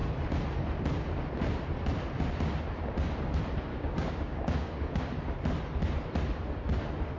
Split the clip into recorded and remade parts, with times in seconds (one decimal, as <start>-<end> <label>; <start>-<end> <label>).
0.0-3.7 recorded; 3.7-5.0 remade; 5.0-7.2 recorded